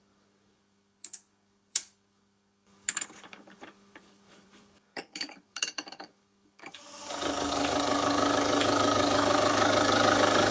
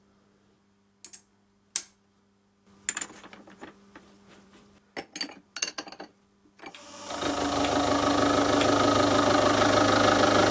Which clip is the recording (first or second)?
second